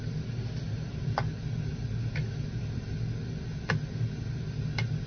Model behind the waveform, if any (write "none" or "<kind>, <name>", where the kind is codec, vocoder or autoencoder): none